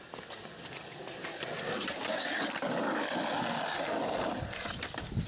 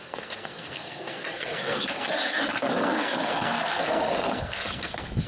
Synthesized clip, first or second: second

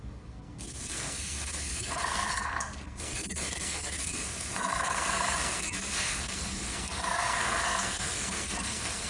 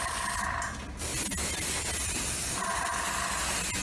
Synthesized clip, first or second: first